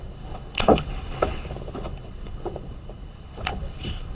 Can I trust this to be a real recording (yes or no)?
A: no